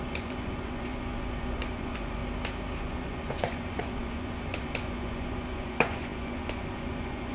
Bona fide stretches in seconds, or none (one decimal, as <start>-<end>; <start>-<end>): 2.2-2.8